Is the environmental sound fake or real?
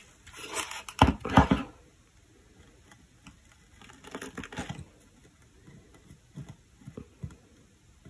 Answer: real